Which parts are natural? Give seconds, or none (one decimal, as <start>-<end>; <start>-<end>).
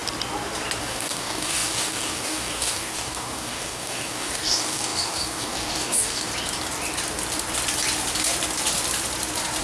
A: 0.0-0.8; 6.3-9.6